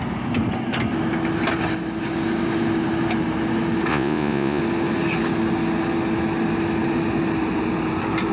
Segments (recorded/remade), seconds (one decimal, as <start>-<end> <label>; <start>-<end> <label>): 0.0-3.9 recorded; 3.9-4.6 remade; 4.6-8.3 recorded